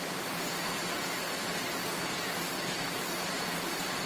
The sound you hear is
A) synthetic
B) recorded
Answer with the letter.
A